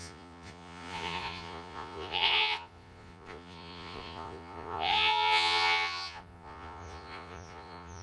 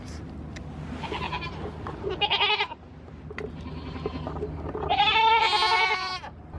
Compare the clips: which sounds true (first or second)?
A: second